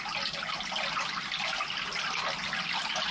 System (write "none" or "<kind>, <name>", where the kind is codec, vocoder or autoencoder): none